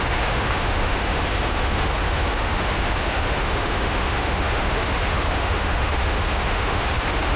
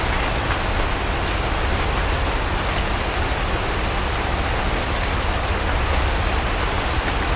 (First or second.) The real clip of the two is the second